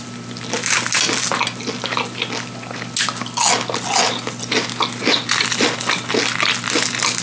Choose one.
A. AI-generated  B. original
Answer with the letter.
B